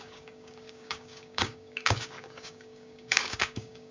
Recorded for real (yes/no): no